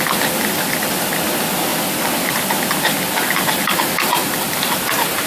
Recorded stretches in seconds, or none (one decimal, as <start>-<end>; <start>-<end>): 0.0-5.3